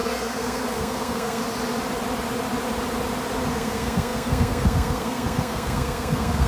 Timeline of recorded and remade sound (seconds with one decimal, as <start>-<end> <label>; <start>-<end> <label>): 0.0-1.4 remade; 1.4-3.5 recorded; 3.5-6.5 remade